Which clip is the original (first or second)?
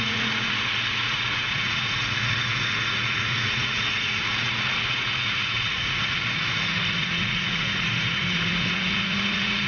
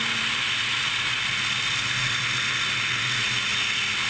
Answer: second